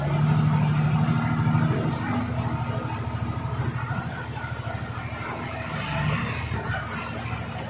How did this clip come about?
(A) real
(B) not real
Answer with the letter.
A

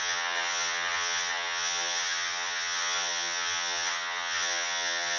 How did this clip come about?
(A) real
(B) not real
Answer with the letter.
B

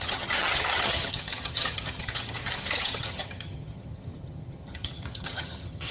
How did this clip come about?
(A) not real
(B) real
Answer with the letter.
A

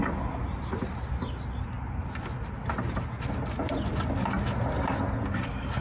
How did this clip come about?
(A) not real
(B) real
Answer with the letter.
B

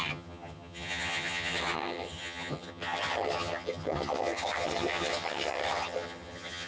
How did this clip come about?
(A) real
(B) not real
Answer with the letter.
B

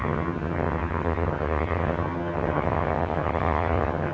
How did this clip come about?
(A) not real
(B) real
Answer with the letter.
A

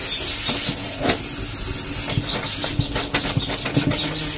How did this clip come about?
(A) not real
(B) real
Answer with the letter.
B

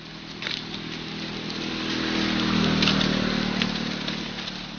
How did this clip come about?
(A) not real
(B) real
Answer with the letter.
B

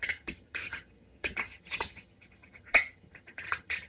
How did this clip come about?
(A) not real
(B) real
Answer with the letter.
A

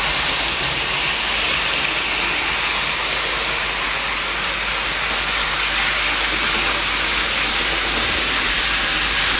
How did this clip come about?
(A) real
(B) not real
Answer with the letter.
A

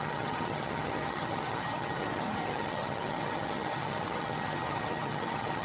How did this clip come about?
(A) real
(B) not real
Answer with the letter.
B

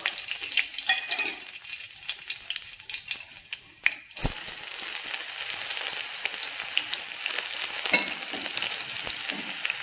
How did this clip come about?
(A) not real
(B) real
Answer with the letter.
B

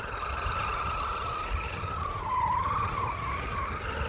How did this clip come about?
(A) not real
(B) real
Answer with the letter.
B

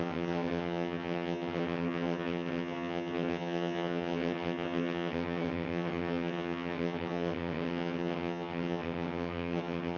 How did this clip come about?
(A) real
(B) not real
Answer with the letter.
B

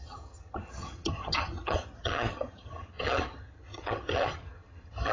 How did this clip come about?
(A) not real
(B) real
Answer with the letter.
A